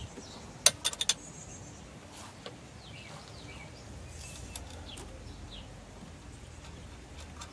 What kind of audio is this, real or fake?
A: real